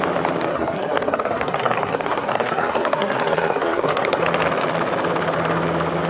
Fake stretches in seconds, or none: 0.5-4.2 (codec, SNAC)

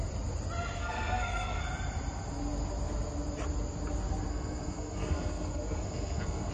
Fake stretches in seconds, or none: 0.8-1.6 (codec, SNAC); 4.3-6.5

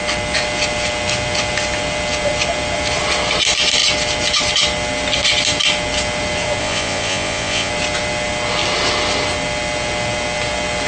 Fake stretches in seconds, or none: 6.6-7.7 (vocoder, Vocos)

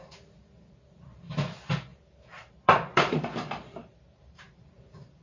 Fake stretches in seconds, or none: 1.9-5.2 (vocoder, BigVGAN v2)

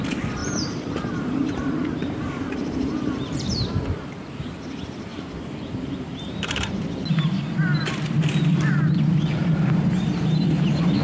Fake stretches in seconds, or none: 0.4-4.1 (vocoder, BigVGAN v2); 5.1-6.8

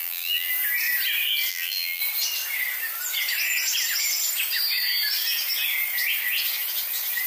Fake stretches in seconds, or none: 0.0-0.5 (vocoder, BigVGAN v2); 1.5-2.0